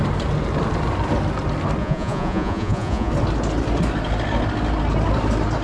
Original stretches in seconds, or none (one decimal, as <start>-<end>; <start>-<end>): 0.0-1.8; 3.1-5.6